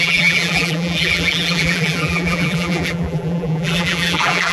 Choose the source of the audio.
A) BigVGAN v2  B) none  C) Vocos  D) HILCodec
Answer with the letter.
A